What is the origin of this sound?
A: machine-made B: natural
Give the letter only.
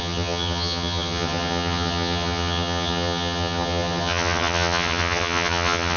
A